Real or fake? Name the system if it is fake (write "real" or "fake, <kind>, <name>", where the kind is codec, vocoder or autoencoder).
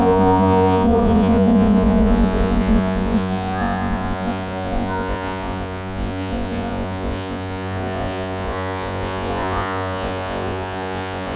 fake, vocoder, Vocos